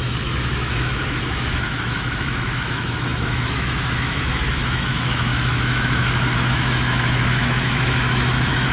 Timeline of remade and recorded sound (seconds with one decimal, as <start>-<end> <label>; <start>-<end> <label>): 0.0-8.7 remade